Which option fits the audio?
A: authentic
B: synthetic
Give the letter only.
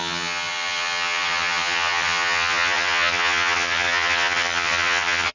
B